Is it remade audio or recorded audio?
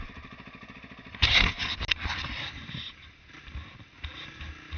recorded